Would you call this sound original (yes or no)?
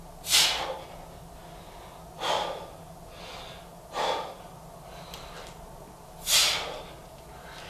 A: yes